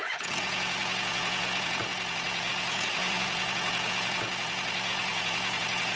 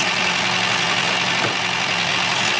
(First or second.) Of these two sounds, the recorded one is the second